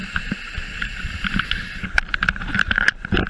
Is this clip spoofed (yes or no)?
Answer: no